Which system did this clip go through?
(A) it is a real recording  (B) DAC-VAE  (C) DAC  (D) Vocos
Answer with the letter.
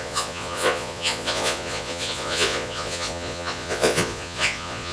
D